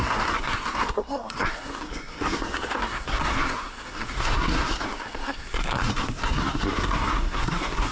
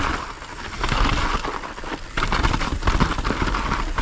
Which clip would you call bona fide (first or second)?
second